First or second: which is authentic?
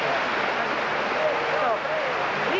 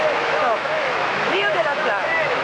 first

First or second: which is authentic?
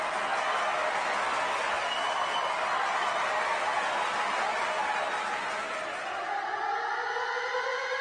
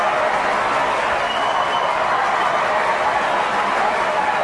first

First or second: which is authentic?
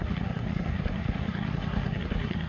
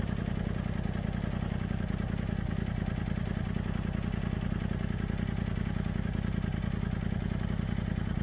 second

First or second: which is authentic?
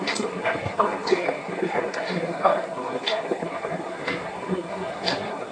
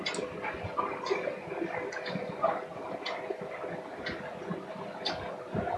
second